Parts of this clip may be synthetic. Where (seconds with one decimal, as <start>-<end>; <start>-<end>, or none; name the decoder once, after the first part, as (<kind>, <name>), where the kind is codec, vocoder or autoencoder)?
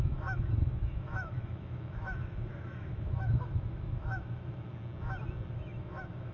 0.0-4.7 (autoencoder, DAC-VAE); 5.5-6.3